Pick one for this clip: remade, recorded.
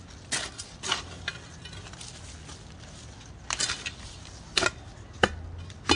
recorded